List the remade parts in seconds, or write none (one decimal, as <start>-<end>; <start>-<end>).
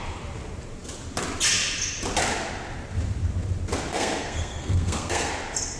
3.9-5.3